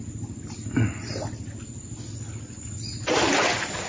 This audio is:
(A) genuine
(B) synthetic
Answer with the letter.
A